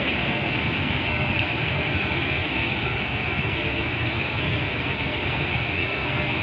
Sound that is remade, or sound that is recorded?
remade